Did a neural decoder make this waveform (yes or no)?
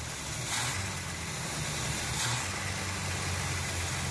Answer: no